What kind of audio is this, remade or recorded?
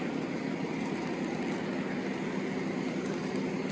recorded